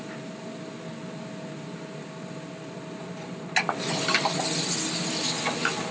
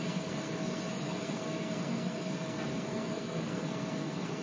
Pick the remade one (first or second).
second